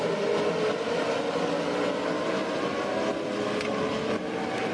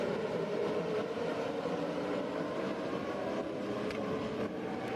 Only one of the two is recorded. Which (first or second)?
first